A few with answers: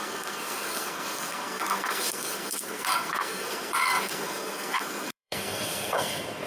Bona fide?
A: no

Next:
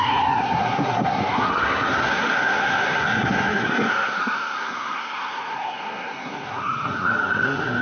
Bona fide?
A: no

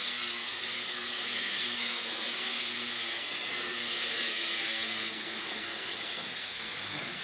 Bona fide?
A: no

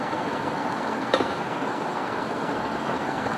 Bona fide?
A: no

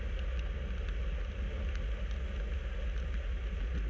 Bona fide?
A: yes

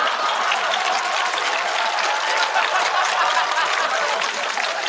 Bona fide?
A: yes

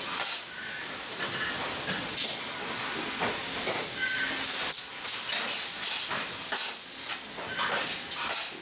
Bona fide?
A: yes